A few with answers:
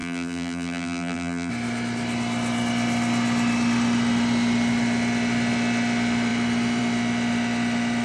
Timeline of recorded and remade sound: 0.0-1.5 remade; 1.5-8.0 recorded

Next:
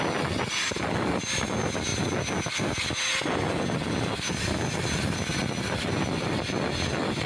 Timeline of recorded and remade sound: 0.0-7.3 recorded

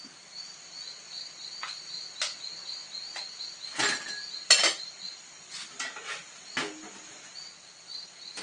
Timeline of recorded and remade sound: 0.0-6.2 recorded; 6.2-7.3 remade; 7.3-8.4 recorded

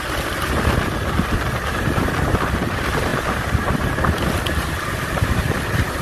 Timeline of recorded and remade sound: 0.0-3.1 recorded; 3.1-4.3 remade; 4.3-6.0 recorded

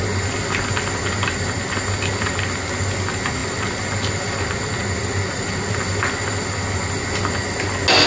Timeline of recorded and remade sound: 0.0-8.1 recorded

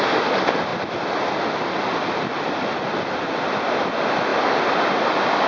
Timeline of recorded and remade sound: 0.0-4.3 recorded; 4.3-5.0 remade; 5.0-5.5 recorded

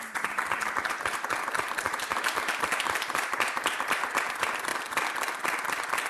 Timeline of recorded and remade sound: 0.0-4.7 remade; 4.7-6.1 recorded